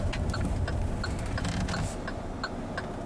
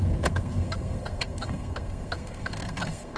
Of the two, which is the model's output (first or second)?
second